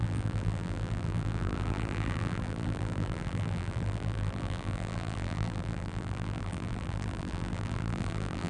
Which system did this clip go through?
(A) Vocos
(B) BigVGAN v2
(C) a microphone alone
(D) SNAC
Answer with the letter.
B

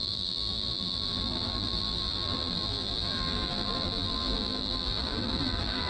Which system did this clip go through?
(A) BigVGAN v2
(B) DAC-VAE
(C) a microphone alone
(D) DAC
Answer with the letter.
A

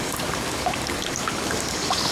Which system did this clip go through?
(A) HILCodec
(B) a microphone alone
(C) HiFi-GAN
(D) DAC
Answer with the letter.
D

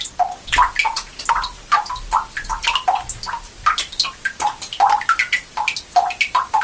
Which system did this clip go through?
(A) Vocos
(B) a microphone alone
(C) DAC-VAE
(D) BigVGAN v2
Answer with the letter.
B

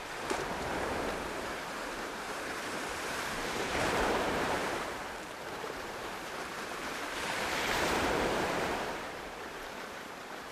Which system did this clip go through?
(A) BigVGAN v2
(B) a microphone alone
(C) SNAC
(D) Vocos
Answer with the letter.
A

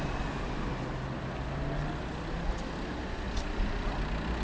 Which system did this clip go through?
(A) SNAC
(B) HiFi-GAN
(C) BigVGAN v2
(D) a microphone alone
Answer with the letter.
D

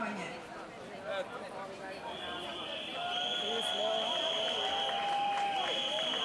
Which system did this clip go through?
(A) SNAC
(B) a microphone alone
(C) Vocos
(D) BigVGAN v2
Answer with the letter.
B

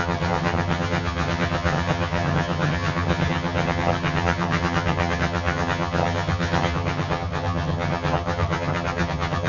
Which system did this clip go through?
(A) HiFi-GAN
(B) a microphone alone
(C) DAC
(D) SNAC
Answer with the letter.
A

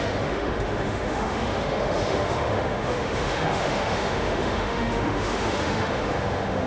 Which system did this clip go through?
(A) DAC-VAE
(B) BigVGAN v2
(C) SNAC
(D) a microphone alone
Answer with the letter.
A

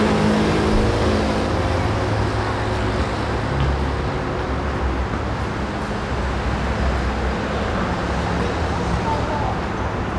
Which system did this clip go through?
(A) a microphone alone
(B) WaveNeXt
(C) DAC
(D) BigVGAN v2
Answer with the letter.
A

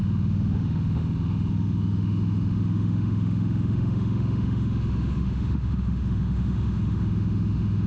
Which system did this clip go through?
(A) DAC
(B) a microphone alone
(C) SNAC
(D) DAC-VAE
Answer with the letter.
D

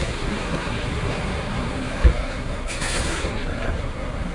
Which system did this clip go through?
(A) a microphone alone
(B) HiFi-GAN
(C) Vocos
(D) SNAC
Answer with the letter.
D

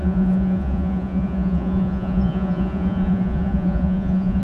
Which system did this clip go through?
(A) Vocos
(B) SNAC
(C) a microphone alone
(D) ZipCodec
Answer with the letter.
A